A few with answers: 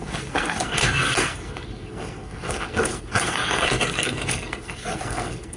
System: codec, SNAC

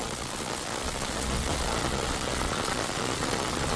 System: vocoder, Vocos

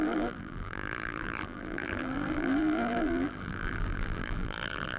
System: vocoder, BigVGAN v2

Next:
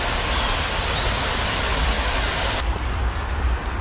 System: none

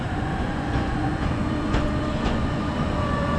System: vocoder, Vocos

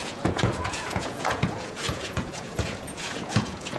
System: vocoder, Vocos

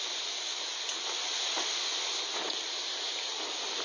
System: none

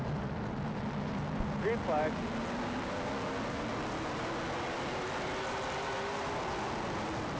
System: none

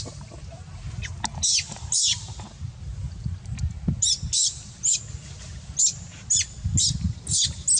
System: none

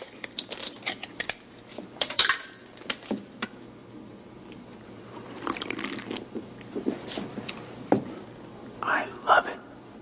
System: vocoder, BigVGAN v2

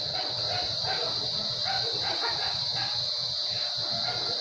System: none